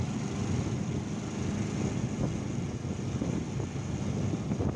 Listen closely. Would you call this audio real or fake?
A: real